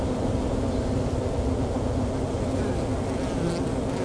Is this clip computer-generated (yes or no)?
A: no